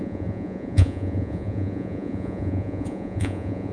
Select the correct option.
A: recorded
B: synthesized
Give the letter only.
B